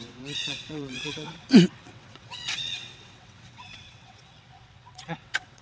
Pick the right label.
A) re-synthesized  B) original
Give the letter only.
A